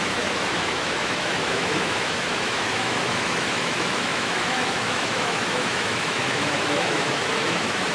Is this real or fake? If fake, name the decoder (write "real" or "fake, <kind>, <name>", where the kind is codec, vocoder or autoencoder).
fake, autoencoder, DAC-VAE